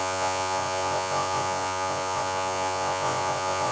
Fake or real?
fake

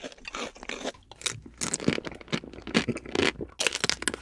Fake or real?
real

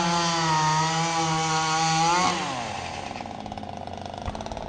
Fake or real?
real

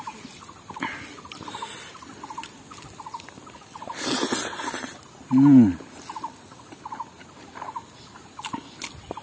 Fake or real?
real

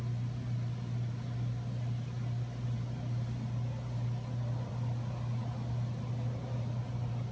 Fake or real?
real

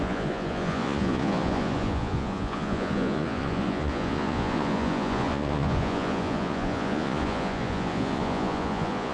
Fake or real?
fake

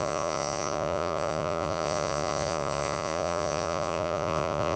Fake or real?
fake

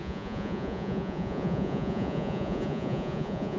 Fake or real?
fake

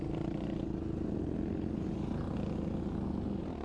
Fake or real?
real